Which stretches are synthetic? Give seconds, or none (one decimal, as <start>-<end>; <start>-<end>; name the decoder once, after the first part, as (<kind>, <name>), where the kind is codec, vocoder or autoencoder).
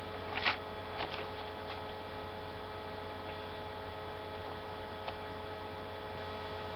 none